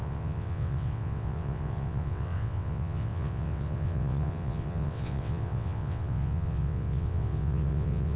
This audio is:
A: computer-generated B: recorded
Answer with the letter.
A